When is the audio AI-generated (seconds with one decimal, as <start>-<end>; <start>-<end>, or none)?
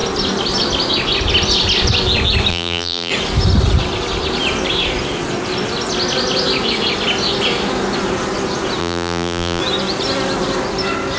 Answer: 2.5-3.1; 8.8-9.6